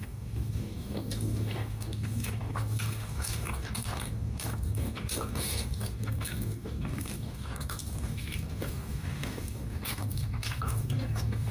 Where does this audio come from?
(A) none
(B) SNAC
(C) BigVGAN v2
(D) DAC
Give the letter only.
D